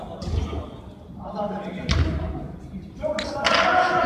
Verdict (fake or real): real